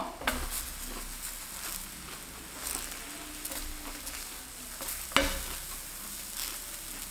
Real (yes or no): yes